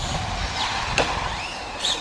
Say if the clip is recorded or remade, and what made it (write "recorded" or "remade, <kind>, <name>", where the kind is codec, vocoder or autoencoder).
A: remade, vocoder, BigVGAN v2